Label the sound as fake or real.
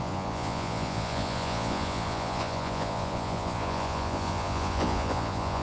fake